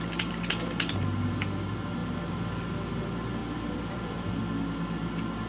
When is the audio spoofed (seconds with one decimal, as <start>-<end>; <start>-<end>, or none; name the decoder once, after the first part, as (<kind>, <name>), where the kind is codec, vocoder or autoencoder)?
3.4-4.4 (vocoder, BigVGAN v2)